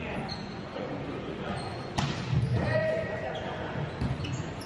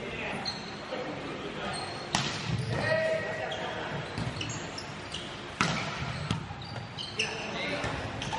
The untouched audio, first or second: second